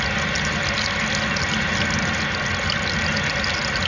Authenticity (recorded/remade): recorded